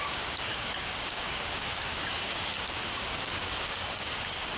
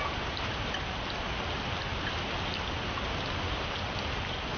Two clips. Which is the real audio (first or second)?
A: second